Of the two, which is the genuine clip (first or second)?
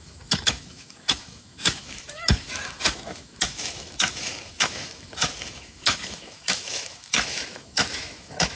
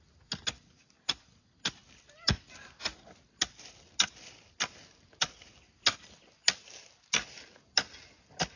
second